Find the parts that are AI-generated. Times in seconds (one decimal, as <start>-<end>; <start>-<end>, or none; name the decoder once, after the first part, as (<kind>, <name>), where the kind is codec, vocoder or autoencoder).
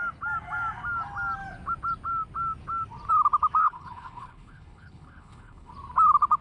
3.6-5.7 (codec, HILCodec)